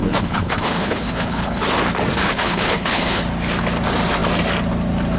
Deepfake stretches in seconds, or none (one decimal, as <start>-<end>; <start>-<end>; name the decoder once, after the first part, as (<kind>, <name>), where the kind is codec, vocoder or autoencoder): 0.0-1.6 (codec, HILCodec); 2.2-3.2